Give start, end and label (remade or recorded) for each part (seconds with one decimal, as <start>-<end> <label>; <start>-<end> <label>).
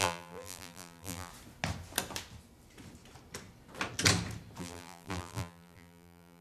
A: 0.0-1.3 remade; 1.3-4.6 recorded; 4.6-6.4 remade